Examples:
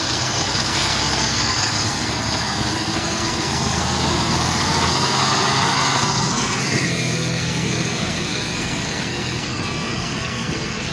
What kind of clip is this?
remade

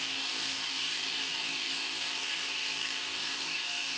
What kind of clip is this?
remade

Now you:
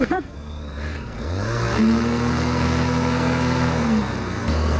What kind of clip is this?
remade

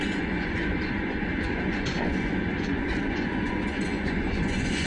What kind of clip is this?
remade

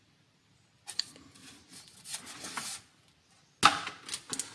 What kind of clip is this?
recorded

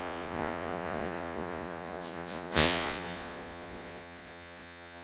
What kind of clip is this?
remade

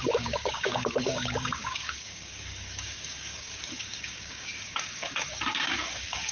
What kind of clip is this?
remade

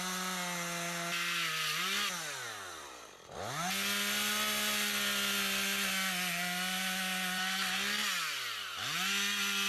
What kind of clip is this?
recorded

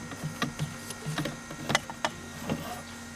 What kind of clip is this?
recorded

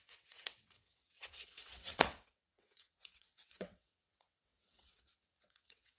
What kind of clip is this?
remade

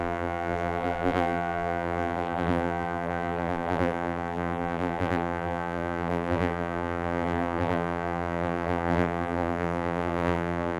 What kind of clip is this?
remade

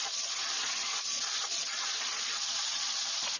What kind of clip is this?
remade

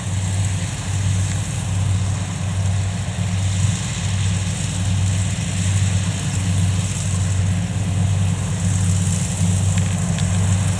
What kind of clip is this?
recorded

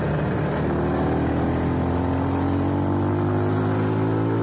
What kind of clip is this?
recorded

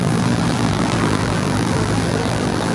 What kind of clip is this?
remade